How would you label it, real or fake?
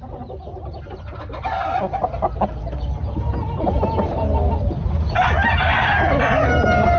real